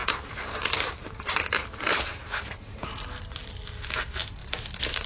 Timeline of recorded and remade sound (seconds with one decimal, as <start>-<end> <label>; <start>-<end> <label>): 0.0-2.9 remade; 2.9-4.4 recorded; 4.4-5.1 remade